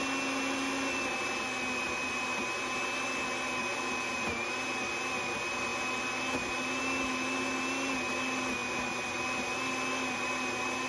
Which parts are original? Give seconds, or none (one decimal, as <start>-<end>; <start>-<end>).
0.0-10.9